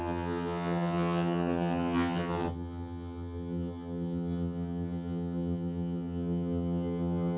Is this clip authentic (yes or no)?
no